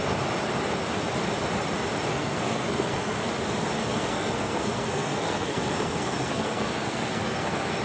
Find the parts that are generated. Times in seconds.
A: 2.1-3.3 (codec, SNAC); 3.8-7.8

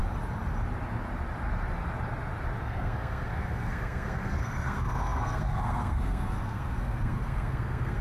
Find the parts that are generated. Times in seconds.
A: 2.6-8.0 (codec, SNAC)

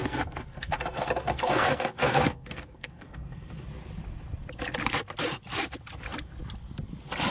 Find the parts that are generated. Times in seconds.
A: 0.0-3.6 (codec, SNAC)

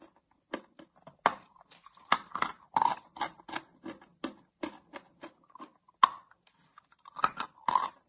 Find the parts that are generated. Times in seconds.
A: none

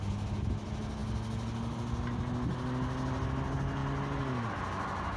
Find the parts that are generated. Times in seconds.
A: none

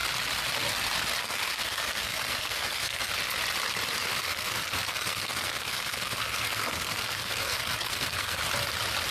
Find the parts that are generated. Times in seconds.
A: 1.2-3.1 (codec, SNAC); 4.1-8.4

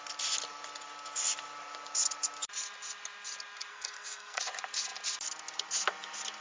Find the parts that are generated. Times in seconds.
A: 3.7-4.4 (codec, SNAC)

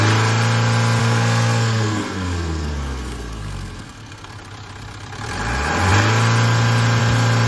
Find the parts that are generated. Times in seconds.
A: 1.0-4.3 (codec, SNAC)